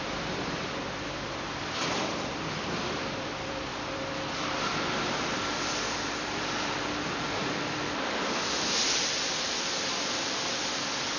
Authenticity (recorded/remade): remade